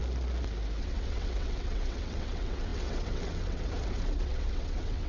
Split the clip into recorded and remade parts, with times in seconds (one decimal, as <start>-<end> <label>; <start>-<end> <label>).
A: 0.0-0.8 recorded; 0.8-5.1 remade